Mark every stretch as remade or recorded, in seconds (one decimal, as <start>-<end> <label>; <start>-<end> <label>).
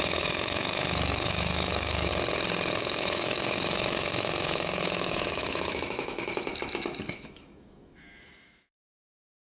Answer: 0.0-2.1 remade; 2.1-2.7 recorded; 2.7-6.5 remade; 6.5-7.1 recorded; 7.1-9.5 remade